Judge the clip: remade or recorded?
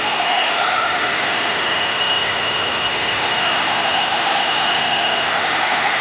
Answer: remade